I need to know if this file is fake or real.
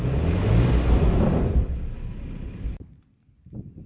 real